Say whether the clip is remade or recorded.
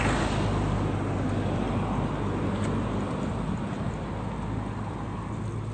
recorded